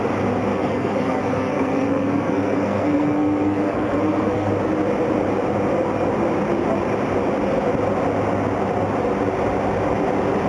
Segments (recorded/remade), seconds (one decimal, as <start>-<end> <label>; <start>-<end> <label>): 0.0-0.5 recorded; 0.5-4.5 remade; 4.5-10.5 recorded